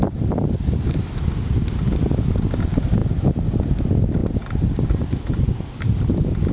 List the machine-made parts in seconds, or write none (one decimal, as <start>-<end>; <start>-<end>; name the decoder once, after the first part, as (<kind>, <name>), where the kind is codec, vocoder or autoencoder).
none